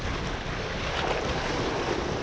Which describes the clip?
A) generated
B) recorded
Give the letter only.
B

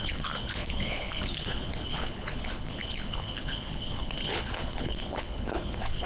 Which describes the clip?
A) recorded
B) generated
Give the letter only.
B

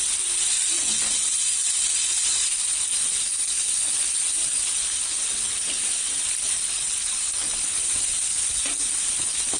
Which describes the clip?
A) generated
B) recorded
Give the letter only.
B